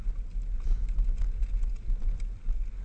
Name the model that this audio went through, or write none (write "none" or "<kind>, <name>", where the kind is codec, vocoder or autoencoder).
none